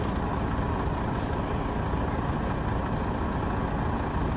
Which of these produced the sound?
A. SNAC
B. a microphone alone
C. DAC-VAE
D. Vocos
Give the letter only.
B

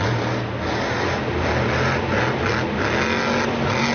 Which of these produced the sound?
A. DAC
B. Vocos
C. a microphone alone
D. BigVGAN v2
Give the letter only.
C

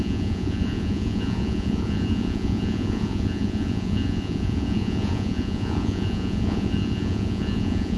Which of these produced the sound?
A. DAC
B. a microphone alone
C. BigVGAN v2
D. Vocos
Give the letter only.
D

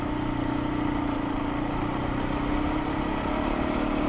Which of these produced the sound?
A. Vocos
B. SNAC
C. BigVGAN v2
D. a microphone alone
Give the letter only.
D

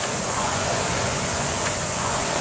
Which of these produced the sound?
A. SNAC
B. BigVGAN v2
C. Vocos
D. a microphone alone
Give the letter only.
C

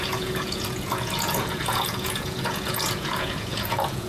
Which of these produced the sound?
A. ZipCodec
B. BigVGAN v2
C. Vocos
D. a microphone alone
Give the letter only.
C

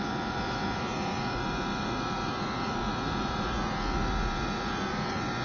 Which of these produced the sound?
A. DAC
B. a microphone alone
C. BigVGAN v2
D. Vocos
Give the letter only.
D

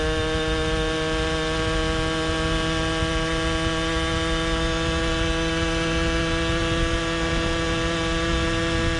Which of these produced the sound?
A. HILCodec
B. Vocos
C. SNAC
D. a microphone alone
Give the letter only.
D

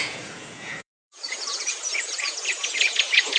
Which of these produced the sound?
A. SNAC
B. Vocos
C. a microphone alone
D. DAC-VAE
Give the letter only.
B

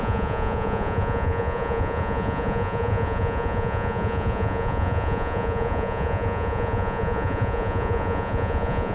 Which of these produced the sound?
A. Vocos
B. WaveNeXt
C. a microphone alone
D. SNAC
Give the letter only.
A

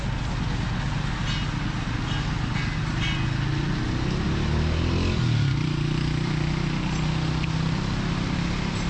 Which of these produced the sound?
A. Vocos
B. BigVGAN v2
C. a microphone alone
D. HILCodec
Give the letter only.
C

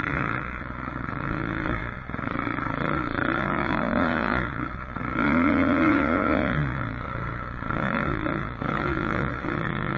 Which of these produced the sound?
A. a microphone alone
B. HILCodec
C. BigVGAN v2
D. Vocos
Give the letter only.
D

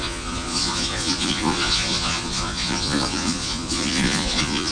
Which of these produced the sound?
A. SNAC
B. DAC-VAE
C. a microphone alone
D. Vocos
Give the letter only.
D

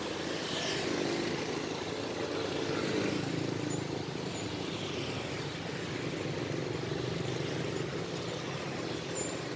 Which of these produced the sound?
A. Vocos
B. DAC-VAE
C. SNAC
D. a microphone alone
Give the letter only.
D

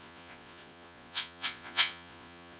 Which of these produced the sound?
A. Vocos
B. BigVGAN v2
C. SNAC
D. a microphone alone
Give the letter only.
A